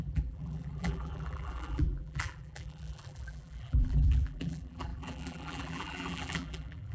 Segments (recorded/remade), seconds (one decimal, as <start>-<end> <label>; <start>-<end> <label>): 0.0-6.9 remade